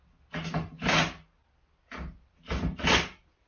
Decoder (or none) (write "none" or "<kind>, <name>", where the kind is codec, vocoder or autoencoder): none